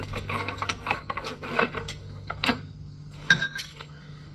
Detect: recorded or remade remade